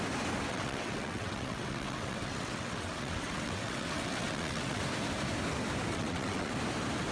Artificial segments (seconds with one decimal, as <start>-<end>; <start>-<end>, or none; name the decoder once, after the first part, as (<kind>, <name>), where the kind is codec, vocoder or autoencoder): 0.5-4.8 (vocoder, WaveNeXt); 5.9-6.5